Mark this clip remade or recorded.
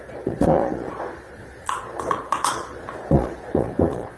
remade